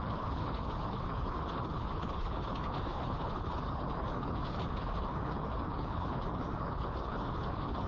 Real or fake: fake